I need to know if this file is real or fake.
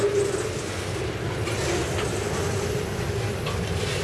real